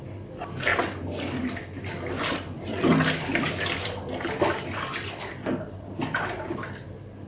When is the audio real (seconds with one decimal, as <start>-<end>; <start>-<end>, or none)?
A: 0.0-7.3